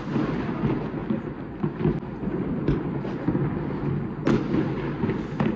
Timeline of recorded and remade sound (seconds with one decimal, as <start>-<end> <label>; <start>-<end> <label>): 0.0-5.6 recorded